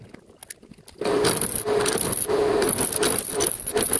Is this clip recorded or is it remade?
recorded